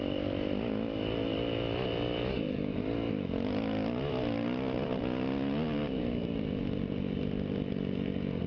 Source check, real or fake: real